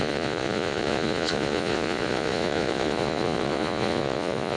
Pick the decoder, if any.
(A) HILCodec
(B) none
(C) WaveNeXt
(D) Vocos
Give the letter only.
D